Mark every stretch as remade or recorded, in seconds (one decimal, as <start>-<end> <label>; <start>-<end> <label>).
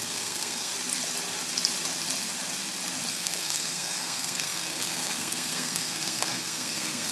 0.0-0.7 remade; 0.7-3.1 recorded; 3.1-7.1 remade